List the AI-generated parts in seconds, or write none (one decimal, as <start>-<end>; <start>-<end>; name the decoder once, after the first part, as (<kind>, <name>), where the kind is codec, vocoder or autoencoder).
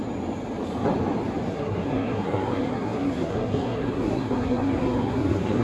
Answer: 1.5-5.6 (codec, SNAC)